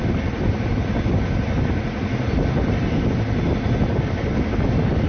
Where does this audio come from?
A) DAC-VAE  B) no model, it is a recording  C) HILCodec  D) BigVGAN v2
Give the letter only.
B